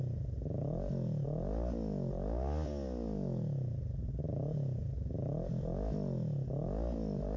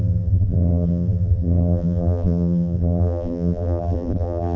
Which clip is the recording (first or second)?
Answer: first